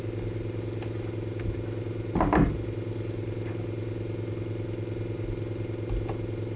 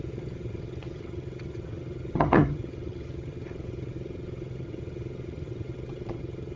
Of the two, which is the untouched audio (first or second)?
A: first